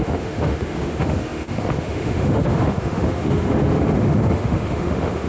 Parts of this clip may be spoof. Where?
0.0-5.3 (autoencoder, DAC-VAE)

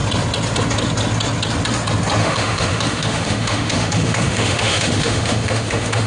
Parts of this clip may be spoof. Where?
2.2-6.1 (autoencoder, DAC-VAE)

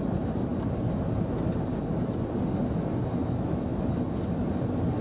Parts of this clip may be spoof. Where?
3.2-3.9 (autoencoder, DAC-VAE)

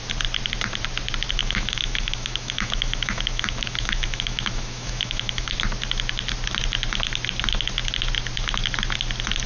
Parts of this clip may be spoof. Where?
1.4-5.5 (autoencoder, DAC-VAE)

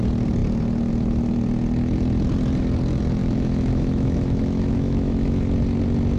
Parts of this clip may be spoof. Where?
3.2-5.4 (autoencoder, DAC-VAE)

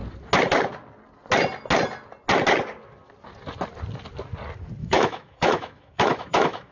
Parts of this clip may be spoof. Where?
4.8-6.7 (autoencoder, DAC-VAE)

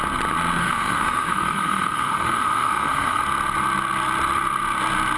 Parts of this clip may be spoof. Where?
0.6-3.2 (autoencoder, DAC-VAE)

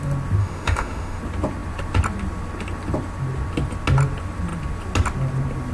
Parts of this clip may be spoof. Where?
0.4-1.2 (autoencoder, DAC-VAE)